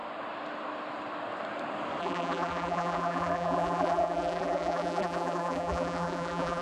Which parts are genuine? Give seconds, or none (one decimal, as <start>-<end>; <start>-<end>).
0.0-2.0